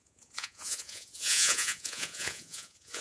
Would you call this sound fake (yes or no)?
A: yes